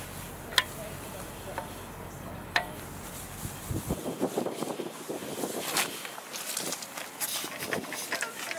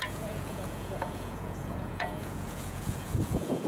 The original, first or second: first